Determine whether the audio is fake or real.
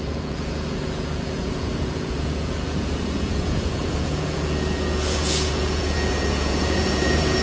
fake